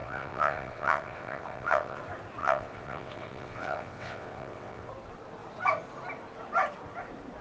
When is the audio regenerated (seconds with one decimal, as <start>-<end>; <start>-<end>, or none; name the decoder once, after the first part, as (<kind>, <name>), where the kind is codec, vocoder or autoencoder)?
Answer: 0.0-2.0 (vocoder, WaveNeXt); 2.4-4.9